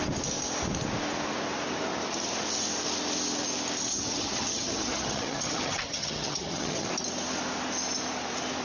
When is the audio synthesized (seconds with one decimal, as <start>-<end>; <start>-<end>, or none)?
3.9-6.9